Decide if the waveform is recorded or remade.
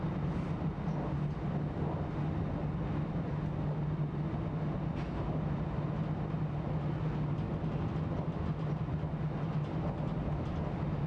recorded